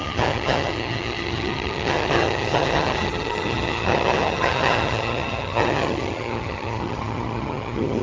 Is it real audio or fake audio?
fake